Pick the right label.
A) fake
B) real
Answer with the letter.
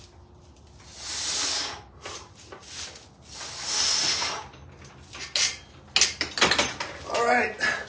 B